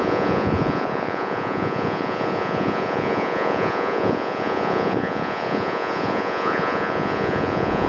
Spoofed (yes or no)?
yes